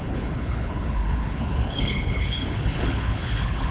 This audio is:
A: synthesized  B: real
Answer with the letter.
A